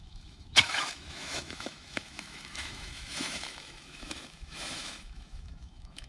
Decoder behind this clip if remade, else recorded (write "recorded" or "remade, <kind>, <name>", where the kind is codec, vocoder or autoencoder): remade, autoencoder, DAC-VAE